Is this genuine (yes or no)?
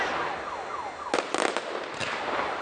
yes